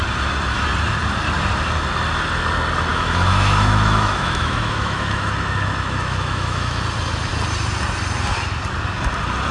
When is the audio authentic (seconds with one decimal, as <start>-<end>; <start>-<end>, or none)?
0.0-2.9; 6.8-9.5